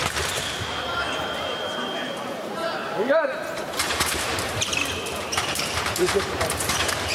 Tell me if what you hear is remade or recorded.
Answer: remade